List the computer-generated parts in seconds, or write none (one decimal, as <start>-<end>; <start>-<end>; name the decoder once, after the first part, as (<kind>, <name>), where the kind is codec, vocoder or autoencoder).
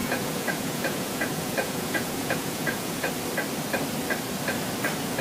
0.0-3.1 (vocoder, Vocos)